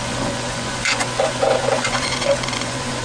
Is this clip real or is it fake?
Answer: fake